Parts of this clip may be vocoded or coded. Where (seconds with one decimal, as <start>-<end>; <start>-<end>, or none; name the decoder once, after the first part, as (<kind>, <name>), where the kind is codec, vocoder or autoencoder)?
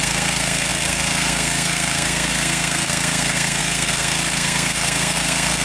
0.0-5.6 (codec, SNAC)